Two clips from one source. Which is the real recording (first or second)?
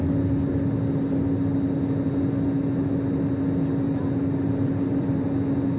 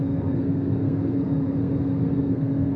first